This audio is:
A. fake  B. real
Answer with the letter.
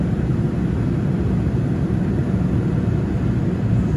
B